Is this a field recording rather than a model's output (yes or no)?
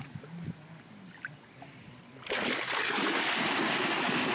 yes